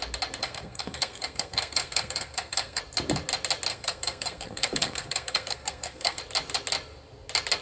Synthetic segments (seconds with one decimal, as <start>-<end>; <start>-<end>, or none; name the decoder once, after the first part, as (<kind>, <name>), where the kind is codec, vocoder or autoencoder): 0.4-2.8 (codec, SNAC); 3.7-6.2